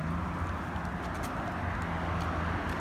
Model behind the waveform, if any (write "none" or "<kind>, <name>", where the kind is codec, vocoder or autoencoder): none